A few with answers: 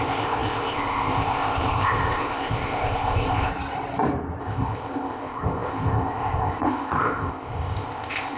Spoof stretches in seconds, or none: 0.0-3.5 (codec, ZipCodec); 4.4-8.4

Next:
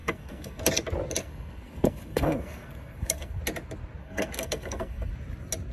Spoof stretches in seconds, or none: 0.0-0.6 (codec, SNAC); 1.2-3.4; 4.0-5.1

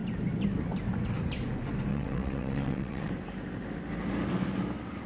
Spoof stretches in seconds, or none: 1.9-3.1 (vocoder, WaveNeXt)

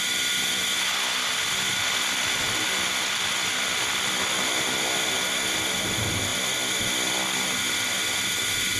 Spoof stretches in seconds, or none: none